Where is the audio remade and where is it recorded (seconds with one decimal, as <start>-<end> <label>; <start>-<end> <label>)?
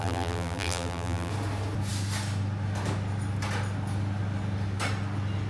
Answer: 0.0-1.3 remade; 1.3-5.5 recorded